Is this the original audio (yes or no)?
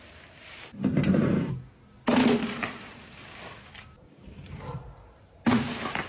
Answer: no